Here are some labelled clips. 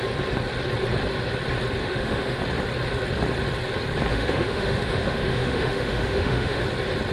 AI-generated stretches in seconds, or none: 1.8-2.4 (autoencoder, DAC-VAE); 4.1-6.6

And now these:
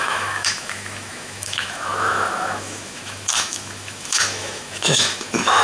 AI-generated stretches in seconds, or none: 0.0-5.6 (autoencoder, DAC-VAE)